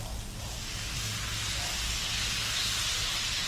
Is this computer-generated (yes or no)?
no